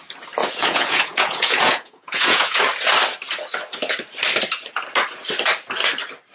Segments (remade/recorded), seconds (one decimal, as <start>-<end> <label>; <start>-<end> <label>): 0.0-0.4 recorded; 0.4-2.6 remade; 2.6-6.3 recorded